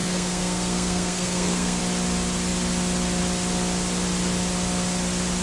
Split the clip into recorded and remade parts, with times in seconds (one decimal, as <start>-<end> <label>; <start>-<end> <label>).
0.0-1.8 remade; 1.8-5.4 recorded